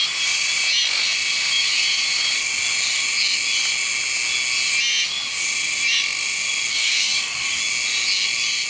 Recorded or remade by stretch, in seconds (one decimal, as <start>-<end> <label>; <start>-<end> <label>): 0.0-6.7 recorded; 6.7-7.6 remade; 7.6-8.7 recorded